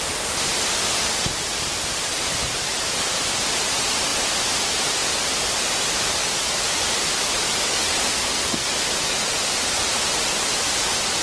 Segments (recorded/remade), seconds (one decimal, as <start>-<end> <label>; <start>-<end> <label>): 0.0-8.1 recorded; 8.1-8.7 remade; 8.7-11.2 recorded